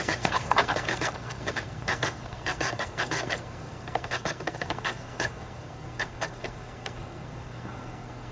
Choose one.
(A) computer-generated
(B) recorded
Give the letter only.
A